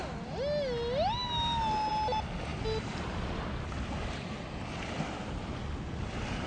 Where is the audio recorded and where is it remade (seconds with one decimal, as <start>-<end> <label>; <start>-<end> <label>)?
0.0-6.5 recorded